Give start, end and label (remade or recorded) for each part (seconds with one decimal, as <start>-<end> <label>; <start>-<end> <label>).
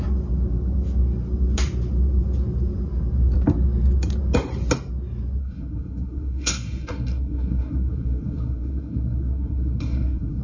0.0-5.4 recorded; 5.4-10.4 remade